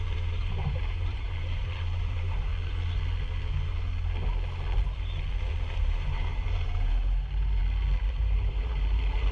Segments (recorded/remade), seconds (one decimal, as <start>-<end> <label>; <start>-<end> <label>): 0.0-2.5 remade; 2.5-5.7 recorded; 5.7-7.6 remade; 7.6-8.1 recorded; 8.1-9.3 remade